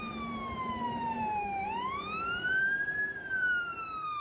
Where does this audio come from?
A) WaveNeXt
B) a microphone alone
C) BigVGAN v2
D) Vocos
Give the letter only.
C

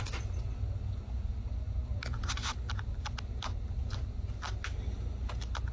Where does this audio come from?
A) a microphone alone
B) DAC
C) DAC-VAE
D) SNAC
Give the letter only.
A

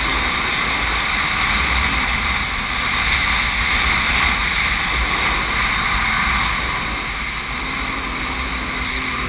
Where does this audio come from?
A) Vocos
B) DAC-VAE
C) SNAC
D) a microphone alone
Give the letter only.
D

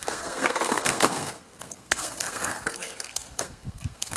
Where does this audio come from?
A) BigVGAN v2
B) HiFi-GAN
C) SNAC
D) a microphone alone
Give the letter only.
C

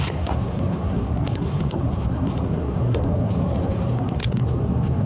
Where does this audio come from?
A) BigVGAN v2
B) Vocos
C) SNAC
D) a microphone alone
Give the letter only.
C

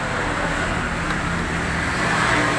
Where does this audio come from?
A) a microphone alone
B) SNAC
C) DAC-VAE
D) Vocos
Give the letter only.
A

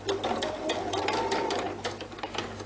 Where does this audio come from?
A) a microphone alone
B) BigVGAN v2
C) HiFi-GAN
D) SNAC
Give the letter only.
A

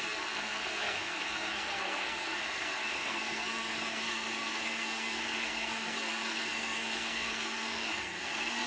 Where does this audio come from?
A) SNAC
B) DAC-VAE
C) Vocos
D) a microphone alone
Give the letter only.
A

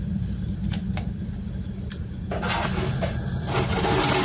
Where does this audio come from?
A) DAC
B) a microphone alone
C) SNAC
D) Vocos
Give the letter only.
B